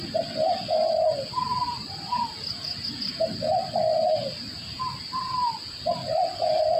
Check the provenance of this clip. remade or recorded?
recorded